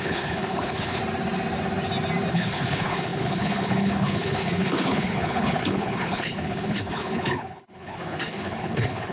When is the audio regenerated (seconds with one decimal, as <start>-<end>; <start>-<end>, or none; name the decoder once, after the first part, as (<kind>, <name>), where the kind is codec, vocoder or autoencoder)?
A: 0.0-1.0 (codec, HILCodec); 2.3-9.1